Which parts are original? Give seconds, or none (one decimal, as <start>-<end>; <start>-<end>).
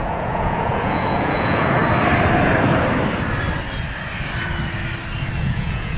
1.8-5.4